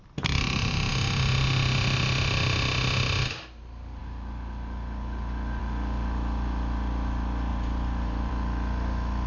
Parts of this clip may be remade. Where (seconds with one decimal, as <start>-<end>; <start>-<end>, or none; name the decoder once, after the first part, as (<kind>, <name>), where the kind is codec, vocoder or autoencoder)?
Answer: 7.5-8.3 (vocoder, BigVGAN v2)